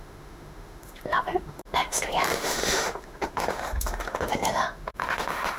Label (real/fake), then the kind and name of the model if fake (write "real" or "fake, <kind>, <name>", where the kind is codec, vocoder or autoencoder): fake, autoencoder, DAC-VAE